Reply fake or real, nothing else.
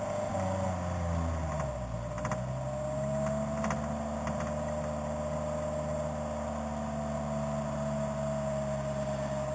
real